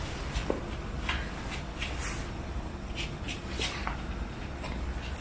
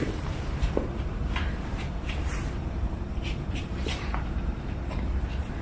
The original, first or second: first